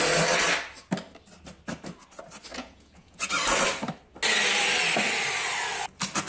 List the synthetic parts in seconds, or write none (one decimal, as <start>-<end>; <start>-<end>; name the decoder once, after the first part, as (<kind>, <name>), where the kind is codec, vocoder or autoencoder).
2.5-3.3 (vocoder, Vocos)